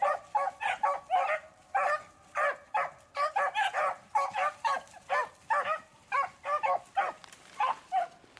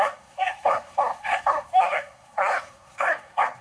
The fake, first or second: second